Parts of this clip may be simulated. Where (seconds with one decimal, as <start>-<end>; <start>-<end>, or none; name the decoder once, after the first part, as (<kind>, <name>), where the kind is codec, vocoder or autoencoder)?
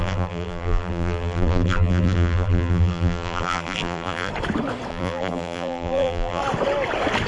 0.0-4.3 (vocoder, BigVGAN v2); 4.9-6.4